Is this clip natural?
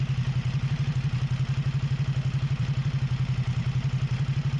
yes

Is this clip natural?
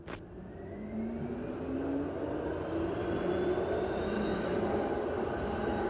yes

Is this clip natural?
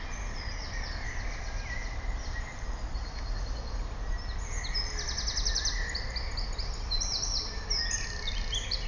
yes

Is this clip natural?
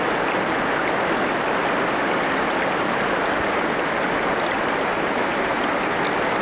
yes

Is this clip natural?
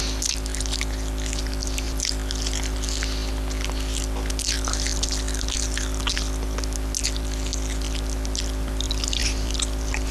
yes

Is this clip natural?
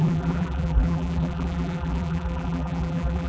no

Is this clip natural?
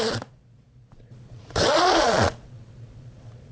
no